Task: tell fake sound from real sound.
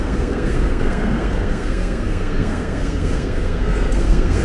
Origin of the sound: fake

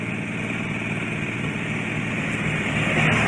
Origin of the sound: real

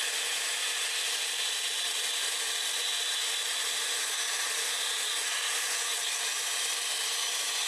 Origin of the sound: real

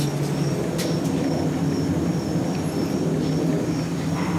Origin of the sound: real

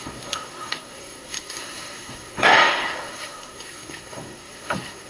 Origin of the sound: fake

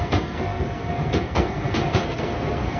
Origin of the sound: fake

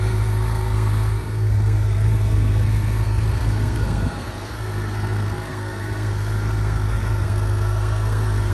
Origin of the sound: fake